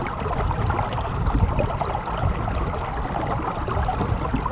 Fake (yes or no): no